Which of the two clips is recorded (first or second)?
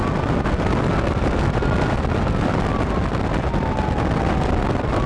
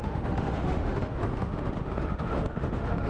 first